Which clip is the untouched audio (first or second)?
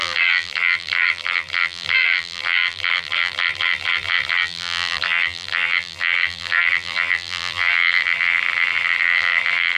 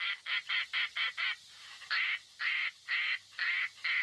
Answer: second